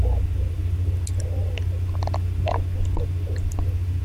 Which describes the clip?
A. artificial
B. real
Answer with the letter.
B